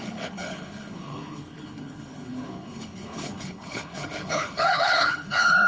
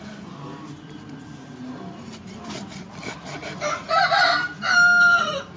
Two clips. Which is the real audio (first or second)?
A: second